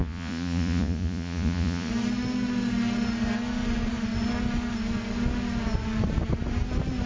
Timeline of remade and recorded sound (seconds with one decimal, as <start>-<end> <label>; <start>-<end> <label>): 0.0-1.9 remade; 1.9-7.1 recorded